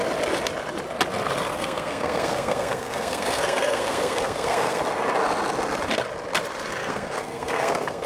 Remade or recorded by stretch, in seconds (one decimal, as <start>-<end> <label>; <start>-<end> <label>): 0.0-1.5 recorded; 1.5-4.8 remade; 4.8-6.8 recorded; 6.8-8.1 remade